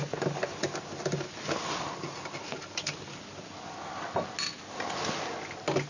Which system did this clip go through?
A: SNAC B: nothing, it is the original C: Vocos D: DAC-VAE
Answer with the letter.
B